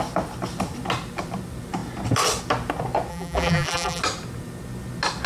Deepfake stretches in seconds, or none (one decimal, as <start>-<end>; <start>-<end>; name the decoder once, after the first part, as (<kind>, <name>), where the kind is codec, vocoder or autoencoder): 3.1-4.0 (vocoder, BigVGAN v2)